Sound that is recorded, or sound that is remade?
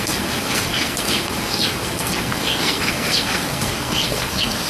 remade